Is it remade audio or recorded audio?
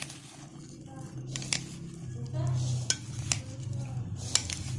recorded